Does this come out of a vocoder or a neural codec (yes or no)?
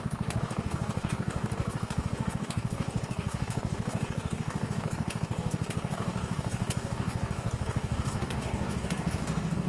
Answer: yes